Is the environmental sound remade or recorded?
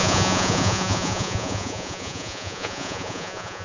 remade